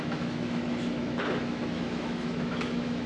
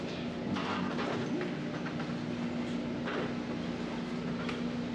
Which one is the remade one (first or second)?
first